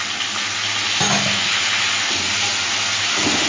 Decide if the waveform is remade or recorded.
recorded